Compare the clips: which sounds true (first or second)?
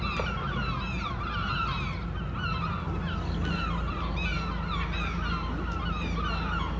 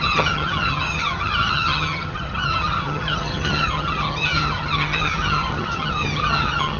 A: first